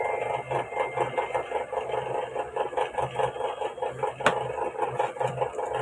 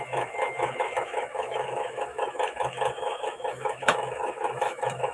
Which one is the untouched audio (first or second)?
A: first